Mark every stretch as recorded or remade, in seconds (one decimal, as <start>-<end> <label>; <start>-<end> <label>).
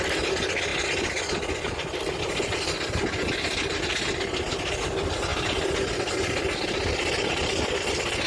0.0-8.3 recorded